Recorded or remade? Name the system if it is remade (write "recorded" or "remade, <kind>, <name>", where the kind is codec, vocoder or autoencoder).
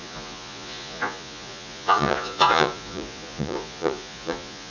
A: remade, vocoder, Vocos